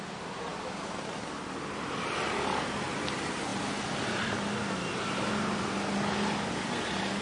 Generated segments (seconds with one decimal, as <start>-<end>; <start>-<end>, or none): none